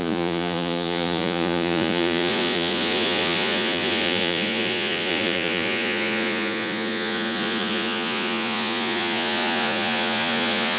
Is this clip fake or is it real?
fake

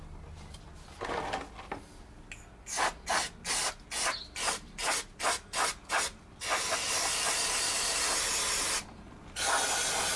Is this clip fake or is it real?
real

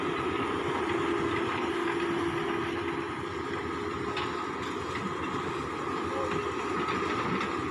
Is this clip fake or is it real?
real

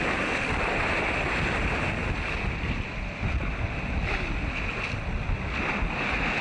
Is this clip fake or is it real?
real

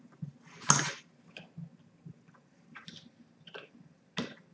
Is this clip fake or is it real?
real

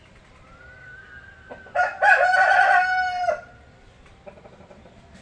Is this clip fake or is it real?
fake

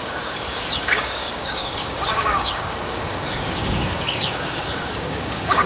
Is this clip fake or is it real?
fake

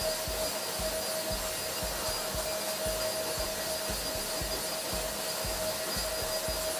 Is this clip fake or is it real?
real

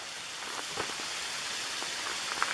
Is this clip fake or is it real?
real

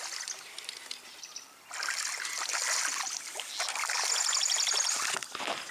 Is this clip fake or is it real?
real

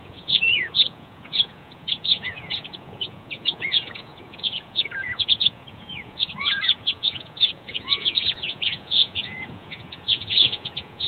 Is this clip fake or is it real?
fake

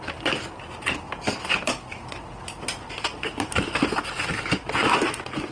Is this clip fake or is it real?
real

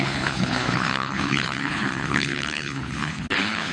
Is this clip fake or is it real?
fake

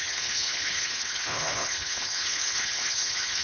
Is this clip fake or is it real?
fake